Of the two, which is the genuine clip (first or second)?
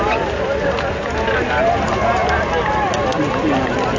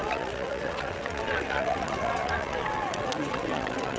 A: first